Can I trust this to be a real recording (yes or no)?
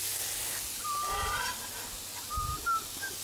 yes